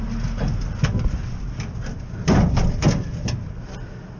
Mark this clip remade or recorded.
recorded